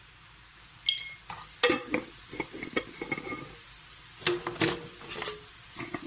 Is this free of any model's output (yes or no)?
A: yes